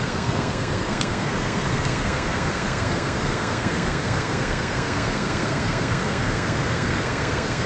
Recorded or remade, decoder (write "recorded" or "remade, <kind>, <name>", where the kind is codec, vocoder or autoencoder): remade, codec, SNAC